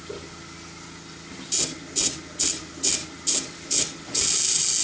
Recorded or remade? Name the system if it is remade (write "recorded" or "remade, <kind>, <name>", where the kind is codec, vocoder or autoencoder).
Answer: recorded